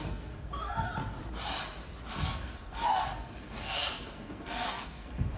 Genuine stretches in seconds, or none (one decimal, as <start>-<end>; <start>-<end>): 0.9-2.1